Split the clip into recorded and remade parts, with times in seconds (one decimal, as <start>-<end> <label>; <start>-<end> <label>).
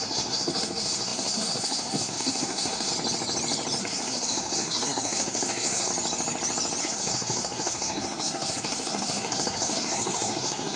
0.0-2.9 remade; 2.9-3.8 recorded; 3.8-5.9 remade; 5.9-6.8 recorded; 6.8-10.8 remade